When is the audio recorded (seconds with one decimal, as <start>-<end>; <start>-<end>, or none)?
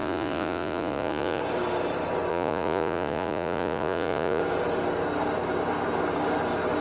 1.4-2.3; 4.4-6.8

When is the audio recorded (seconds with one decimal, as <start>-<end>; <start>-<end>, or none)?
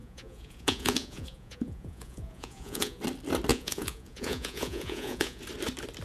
3.0-3.5; 5.4-6.0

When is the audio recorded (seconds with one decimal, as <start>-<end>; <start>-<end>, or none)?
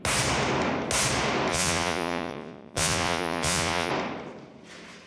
0.0-1.5; 3.9-5.1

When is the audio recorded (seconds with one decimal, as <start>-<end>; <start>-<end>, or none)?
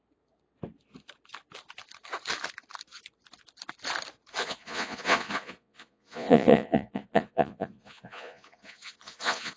0.0-4.4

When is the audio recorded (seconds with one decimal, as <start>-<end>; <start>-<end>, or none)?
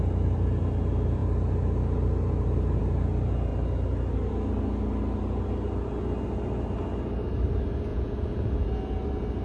0.0-7.9; 8.5-9.4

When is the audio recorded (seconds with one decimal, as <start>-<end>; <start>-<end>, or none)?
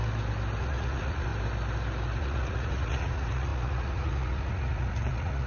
0.0-0.6; 1.3-2.2